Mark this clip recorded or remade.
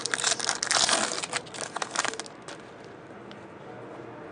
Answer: recorded